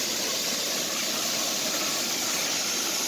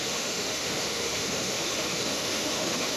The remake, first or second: second